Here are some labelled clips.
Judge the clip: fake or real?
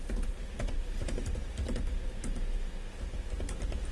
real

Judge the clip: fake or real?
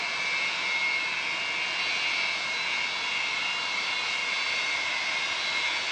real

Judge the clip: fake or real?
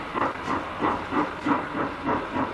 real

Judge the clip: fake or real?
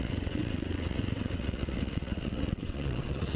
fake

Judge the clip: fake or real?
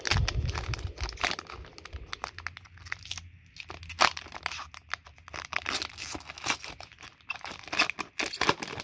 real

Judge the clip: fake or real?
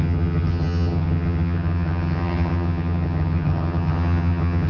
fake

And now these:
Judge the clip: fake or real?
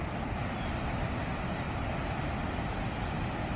real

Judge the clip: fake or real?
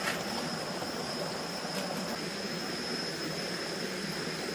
real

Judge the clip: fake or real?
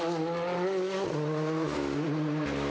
real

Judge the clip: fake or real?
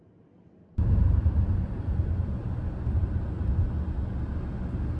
real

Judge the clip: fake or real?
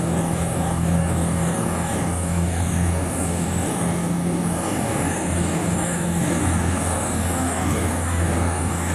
fake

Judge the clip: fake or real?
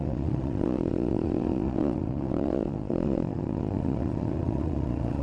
fake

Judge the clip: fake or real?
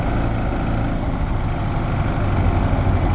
real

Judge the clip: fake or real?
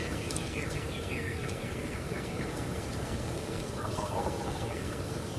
fake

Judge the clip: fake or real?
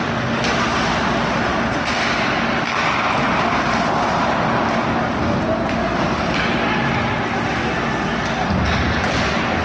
real